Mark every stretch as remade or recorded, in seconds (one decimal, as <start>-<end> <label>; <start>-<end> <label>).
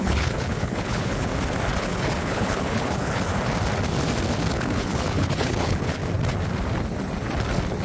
0.0-1.3 remade; 1.3-1.8 recorded; 1.8-3.3 remade; 3.3-4.5 recorded; 4.5-6.0 remade; 6.0-7.8 recorded